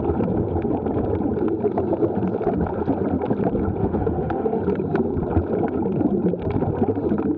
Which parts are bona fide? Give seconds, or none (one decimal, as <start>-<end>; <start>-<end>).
0.0-3.8; 4.6-7.4